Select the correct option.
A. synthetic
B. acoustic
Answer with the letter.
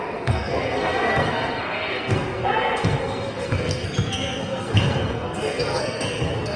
A